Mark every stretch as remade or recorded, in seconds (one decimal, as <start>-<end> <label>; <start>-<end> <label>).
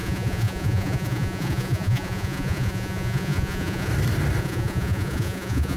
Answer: 0.0-3.9 remade; 3.9-4.4 recorded; 4.4-5.8 remade